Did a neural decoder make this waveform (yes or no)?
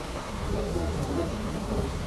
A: yes